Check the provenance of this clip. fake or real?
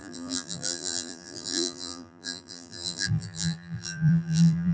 fake